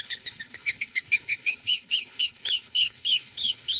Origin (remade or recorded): remade